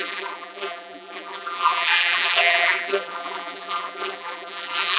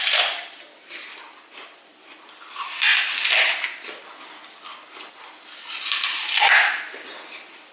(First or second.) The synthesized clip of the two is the first